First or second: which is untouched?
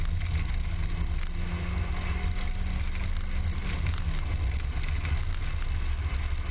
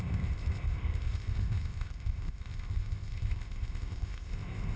first